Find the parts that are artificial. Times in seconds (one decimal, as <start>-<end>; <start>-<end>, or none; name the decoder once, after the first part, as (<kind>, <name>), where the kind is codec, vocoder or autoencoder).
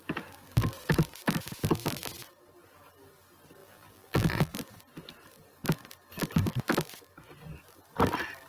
3.6-4.5 (vocoder, BigVGAN v2)